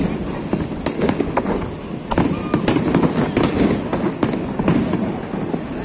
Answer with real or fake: real